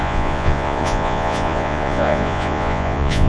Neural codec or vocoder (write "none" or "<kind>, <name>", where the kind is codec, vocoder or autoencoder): vocoder, Vocos